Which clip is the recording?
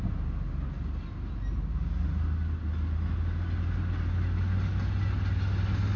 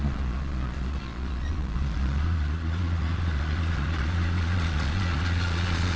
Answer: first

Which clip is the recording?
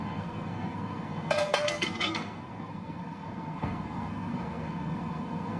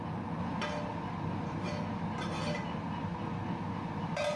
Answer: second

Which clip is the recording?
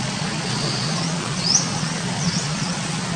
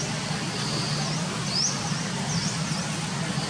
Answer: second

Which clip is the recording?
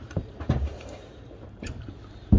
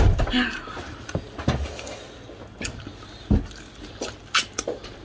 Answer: second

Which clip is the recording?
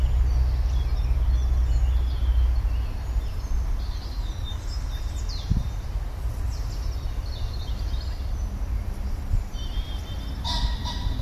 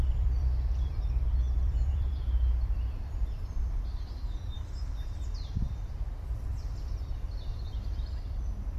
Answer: first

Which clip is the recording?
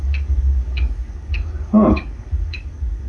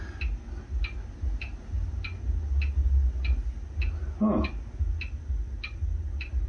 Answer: second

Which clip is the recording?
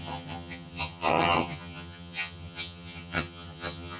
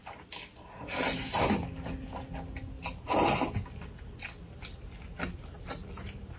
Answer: second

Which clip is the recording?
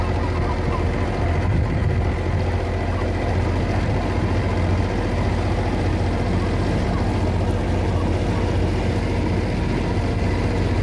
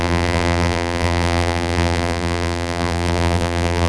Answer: first